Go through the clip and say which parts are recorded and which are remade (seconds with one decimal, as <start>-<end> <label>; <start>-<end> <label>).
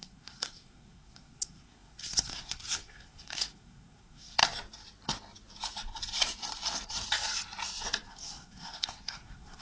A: 0.0-4.4 remade; 4.4-8.1 recorded; 8.1-9.6 remade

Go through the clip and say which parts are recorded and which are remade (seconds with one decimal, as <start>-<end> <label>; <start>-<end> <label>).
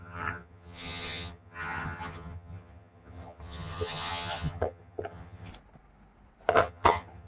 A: 0.0-5.5 remade; 5.5-6.5 recorded; 6.5-7.3 remade